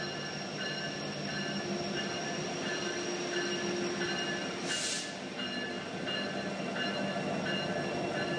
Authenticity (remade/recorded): recorded